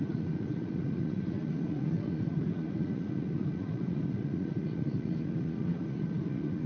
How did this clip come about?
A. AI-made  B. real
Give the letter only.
A